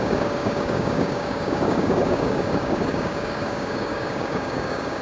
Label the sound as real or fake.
fake